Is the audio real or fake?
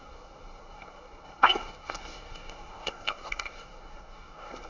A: fake